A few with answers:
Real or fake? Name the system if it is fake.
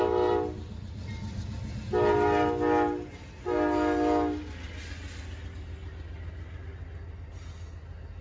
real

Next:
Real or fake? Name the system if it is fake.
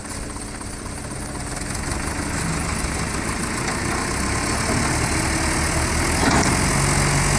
real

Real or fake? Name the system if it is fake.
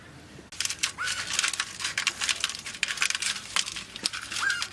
real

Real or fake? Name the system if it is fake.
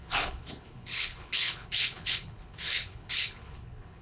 fake, codec, HILCodec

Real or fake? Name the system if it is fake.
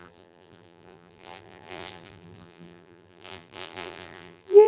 fake, vocoder, BigVGAN v2